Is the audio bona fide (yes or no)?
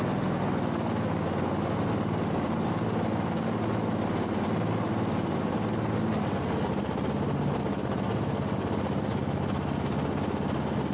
yes